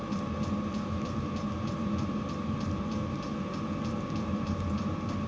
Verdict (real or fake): real